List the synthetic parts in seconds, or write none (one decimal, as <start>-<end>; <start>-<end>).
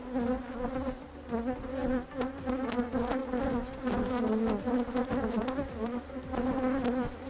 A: none